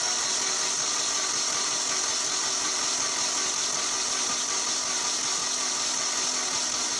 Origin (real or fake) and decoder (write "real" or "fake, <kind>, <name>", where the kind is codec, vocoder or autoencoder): real